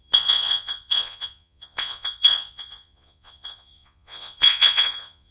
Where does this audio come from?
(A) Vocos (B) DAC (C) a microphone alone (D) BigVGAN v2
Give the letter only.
A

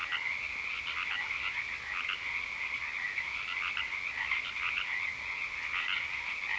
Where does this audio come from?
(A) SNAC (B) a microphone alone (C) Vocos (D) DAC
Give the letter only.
B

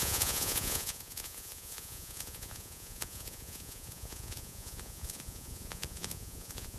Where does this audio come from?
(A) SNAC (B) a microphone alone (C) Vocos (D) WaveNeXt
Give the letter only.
C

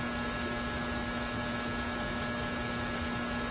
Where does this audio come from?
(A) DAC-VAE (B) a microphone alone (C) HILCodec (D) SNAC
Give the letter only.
B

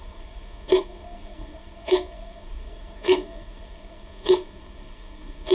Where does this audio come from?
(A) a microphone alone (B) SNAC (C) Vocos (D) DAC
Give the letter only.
B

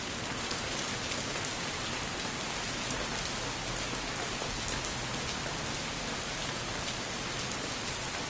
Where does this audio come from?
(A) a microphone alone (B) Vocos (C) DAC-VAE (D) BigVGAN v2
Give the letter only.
A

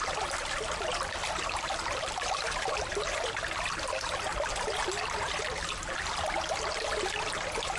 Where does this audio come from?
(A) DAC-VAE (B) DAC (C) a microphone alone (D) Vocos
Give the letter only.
C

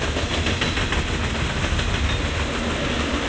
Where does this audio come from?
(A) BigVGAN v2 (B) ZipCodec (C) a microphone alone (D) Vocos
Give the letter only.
C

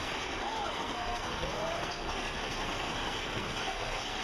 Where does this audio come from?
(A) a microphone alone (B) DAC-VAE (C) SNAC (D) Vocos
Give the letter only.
C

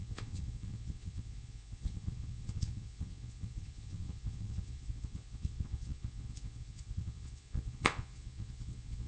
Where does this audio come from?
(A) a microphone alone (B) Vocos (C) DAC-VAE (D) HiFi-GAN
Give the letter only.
B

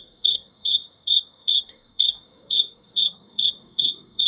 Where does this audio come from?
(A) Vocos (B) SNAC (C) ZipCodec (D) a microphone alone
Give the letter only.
B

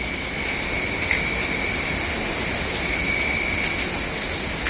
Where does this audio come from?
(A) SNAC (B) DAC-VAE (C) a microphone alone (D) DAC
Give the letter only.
C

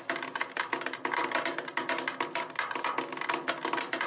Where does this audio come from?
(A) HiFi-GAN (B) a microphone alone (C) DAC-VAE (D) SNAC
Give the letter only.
B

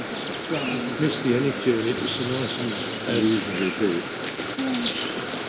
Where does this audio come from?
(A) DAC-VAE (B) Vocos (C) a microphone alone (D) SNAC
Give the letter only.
C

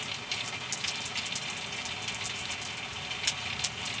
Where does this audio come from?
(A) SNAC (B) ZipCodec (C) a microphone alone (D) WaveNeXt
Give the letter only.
C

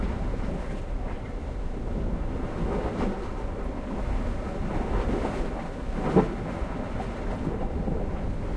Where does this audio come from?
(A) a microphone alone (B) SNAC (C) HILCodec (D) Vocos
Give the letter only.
A